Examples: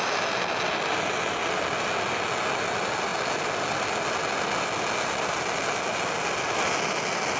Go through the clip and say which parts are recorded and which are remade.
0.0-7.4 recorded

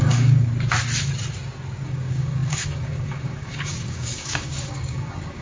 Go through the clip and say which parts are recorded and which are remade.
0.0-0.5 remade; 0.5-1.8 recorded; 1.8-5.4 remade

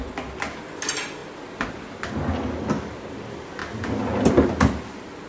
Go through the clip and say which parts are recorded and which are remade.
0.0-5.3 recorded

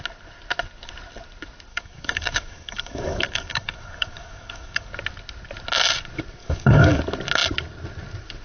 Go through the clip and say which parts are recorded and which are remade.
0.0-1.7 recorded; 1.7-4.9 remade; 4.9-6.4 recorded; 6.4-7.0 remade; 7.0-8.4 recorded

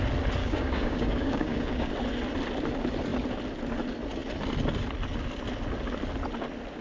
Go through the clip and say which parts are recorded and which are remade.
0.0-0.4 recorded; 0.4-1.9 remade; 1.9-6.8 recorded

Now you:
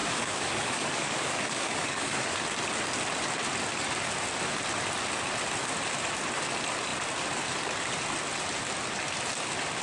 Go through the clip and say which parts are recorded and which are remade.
0.0-2.4 remade; 2.4-9.8 recorded